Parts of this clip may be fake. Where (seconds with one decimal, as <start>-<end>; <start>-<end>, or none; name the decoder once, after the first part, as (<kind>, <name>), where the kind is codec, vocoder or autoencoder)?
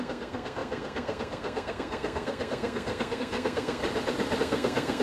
0.0-3.8 (codec, SNAC); 4.4-5.0